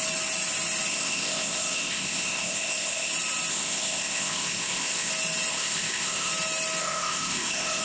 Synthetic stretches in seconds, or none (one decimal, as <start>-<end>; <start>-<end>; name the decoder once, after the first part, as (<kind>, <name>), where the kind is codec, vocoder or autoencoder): 0.9-3.1 (codec, ZipCodec); 3.5-5.1; 5.5-6.3; 6.8-7.8